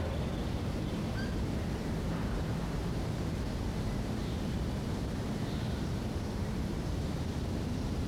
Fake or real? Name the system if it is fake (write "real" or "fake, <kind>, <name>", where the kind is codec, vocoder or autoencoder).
fake, vocoder, BigVGAN v2